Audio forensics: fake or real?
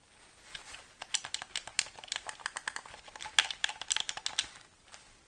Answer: real